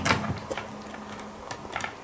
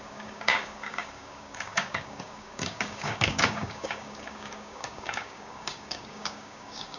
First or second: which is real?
first